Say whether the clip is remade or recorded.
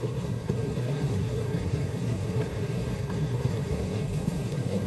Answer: remade